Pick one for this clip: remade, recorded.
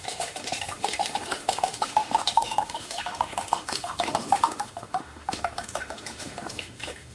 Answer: remade